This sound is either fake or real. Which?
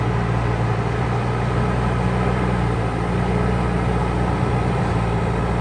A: real